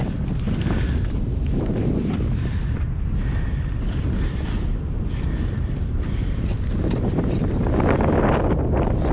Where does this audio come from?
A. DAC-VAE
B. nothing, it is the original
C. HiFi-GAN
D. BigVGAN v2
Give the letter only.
B